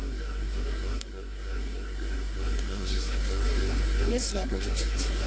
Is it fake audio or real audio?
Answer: fake